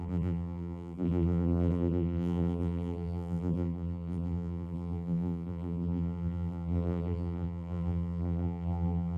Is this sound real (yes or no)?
no